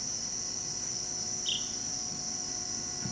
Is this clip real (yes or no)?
yes